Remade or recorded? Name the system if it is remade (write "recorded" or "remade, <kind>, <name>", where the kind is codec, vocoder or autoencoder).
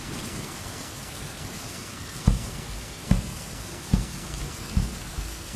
remade, codec, SNAC